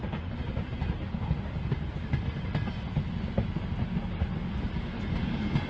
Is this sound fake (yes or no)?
no